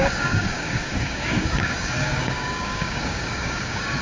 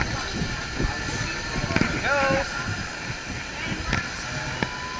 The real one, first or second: second